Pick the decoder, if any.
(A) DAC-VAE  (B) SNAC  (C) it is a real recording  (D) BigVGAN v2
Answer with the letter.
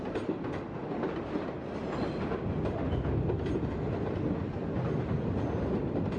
C